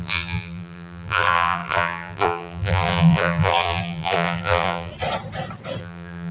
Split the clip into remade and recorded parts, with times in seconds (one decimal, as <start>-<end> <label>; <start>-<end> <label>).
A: 0.0-4.9 remade; 4.9-5.8 recorded; 5.8-6.3 remade